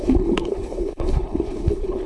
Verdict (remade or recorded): remade